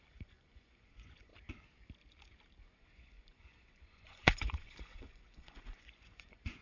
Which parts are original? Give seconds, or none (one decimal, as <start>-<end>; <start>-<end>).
1.3-2.6